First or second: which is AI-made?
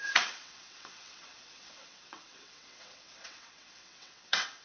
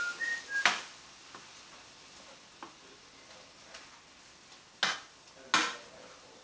first